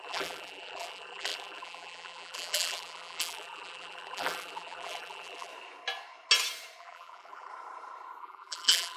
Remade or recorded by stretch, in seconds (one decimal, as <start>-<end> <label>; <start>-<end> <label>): 0.0-5.5 remade; 5.5-6.8 recorded; 6.8-7.5 remade; 7.5-8.2 recorded; 8.2-9.0 remade